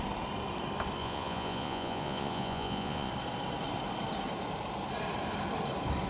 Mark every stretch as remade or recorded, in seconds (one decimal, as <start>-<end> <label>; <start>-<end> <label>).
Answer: 0.0-1.0 recorded; 1.0-3.1 remade; 3.1-6.1 recorded